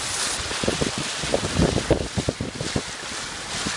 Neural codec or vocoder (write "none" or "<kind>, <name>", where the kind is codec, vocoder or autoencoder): none